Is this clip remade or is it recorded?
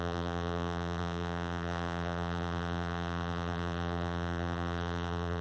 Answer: remade